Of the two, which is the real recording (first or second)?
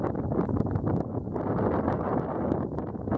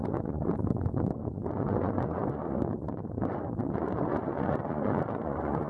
first